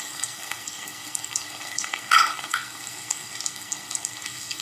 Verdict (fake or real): fake